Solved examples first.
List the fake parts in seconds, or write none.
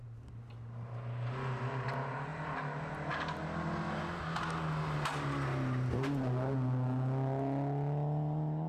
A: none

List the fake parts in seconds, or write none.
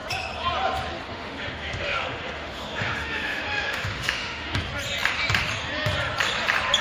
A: 1.1-4.6 (autoencoder, DAC-VAE)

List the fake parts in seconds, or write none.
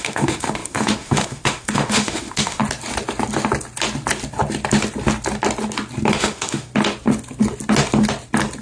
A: 0.0-2.6 (autoencoder, DAC-VAE); 6.1-6.7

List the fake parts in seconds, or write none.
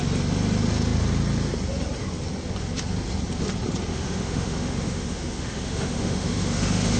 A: 3.9-7.0 (autoencoder, DAC-VAE)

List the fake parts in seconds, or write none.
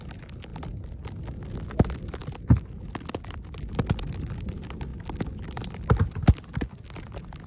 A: none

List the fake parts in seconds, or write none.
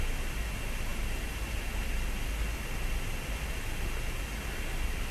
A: none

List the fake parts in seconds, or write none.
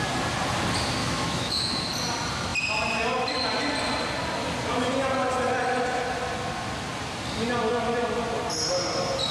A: 1.0-1.7 (autoencoder, DAC-VAE)